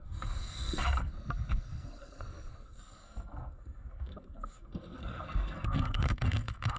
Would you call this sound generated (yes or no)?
yes